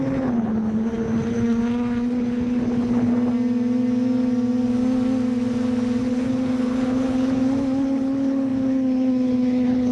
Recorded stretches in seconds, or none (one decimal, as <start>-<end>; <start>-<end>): 3.1-6.0